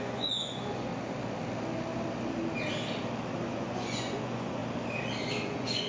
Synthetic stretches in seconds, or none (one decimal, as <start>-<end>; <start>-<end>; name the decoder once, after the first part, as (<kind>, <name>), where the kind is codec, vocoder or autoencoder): 0.0-0.9 (vocoder, Vocos); 3.5-4.6; 5.4-5.9